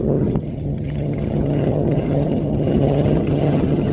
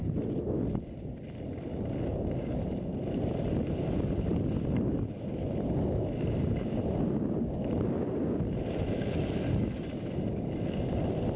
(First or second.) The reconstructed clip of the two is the first